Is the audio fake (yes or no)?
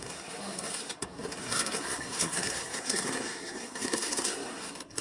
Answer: yes